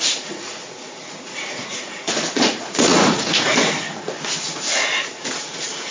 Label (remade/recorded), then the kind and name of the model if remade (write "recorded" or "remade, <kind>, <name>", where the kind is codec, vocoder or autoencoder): remade, vocoder, Vocos